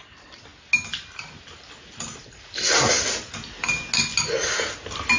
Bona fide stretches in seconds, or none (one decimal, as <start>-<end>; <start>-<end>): 0.0-5.2